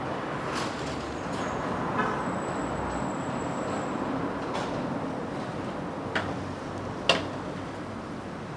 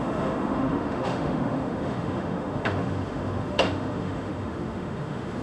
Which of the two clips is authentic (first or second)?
first